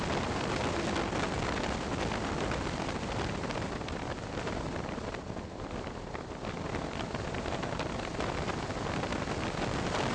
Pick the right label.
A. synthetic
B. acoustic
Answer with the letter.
B